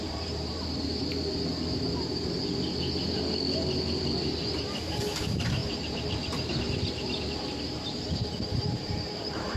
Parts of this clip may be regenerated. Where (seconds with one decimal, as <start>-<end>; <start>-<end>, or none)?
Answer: 0.0-1.1; 4.8-9.6